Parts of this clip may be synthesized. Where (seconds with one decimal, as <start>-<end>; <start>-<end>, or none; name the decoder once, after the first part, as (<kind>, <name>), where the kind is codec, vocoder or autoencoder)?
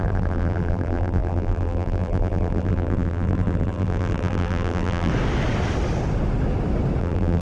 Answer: 0.0-5.1 (vocoder, BigVGAN v2); 7.0-7.4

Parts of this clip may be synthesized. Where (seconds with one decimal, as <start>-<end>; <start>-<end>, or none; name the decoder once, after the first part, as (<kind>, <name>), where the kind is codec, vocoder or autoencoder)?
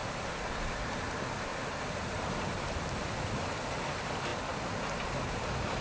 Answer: 0.0-0.5 (vocoder, BigVGAN v2); 1.5-2.7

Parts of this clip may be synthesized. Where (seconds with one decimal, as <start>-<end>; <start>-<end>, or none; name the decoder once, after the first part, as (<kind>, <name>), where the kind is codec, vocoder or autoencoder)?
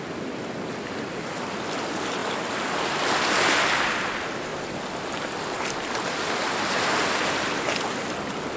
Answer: none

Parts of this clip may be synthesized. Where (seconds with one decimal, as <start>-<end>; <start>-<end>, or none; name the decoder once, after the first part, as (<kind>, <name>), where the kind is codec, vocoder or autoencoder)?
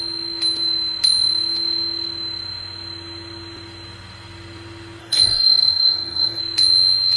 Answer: 5.0-6.4 (codec, DAC)